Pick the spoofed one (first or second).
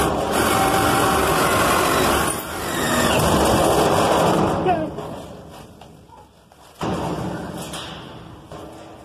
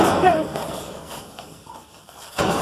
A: second